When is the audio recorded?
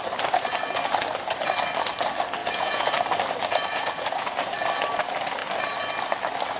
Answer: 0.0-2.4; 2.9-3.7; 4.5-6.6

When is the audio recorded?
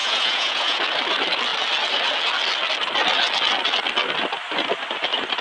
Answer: 0.8-5.4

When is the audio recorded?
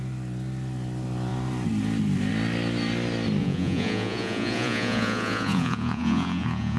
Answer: 0.0-3.4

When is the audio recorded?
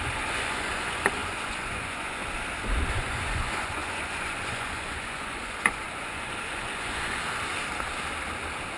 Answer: 2.2-2.9; 7.2-8.8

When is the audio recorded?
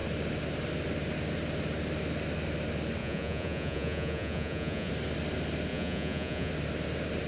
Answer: 0.0-3.0; 4.9-5.7; 6.5-7.3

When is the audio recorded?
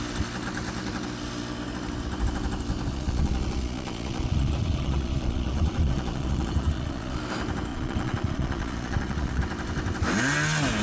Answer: 0.0-2.9; 7.2-7.7; 9.4-10.8